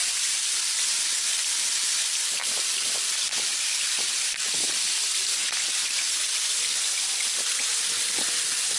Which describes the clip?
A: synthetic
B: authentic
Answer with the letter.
B